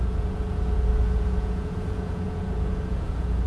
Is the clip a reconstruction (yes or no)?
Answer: yes